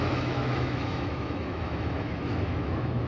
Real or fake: fake